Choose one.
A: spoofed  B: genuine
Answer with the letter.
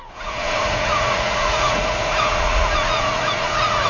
A